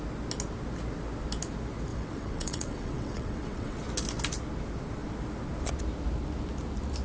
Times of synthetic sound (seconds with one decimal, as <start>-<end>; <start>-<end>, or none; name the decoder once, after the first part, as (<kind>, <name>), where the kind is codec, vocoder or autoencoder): 1.9-3.8 (vocoder, WaveNeXt)